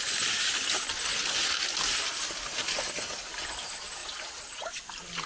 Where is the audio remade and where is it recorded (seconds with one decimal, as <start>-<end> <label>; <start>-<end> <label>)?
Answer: 0.0-4.0 recorded; 4.0-4.8 remade; 4.8-5.3 recorded